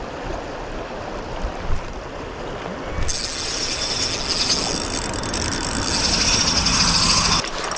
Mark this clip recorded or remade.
recorded